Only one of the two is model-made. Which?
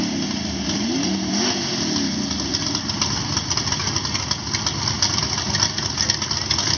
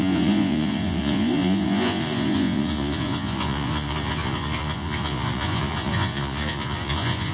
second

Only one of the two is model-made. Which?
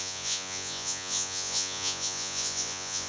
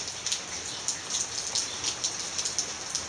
first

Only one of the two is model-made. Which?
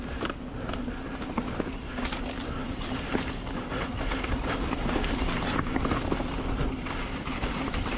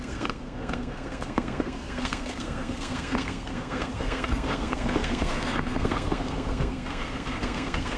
second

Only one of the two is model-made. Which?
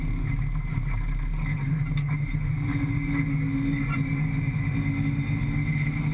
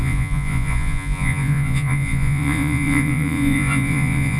second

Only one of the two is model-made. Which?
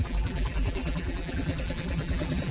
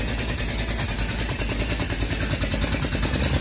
first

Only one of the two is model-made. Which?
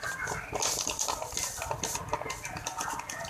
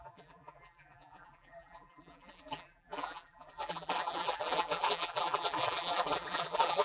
second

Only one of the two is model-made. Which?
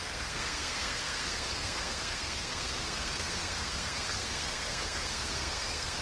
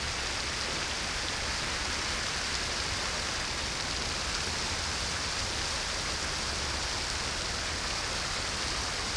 first